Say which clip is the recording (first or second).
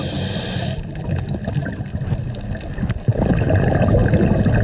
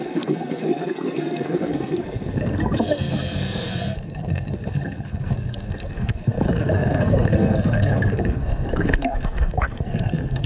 first